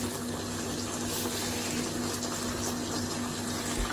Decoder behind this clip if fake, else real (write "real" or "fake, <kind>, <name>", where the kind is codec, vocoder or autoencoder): real